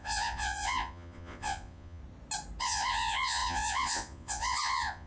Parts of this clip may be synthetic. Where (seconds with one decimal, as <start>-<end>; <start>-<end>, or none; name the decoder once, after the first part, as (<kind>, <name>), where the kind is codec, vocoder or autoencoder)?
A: 0.0-2.0 (vocoder, Vocos); 2.6-5.1